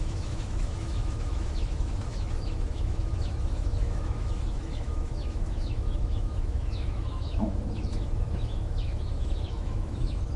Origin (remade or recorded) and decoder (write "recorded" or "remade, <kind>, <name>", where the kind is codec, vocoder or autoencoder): remade, autoencoder, DAC-VAE